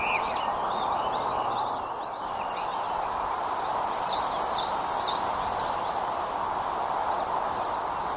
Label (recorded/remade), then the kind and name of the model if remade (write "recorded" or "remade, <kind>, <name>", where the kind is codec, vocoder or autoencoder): recorded